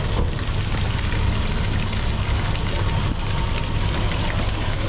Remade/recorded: recorded